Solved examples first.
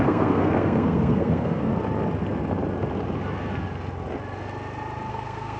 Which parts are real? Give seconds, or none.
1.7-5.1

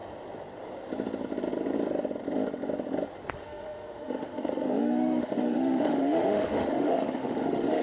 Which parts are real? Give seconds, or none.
0.0-3.3

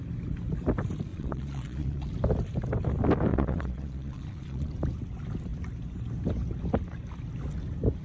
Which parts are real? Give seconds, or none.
0.0-1.1; 2.1-3.3; 4.7-8.0

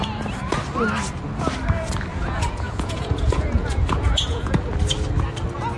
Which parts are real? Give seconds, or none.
0.0-2.1; 4.5-5.8

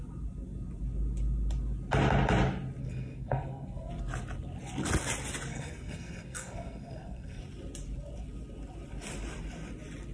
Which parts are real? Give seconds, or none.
0.0-2.8; 3.9-5.5; 7.4-10.1

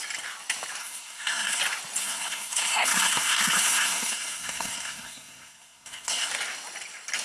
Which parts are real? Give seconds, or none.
0.0-0.8; 1.6-2.0; 6.3-7.2